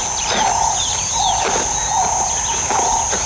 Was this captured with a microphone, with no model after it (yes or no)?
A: yes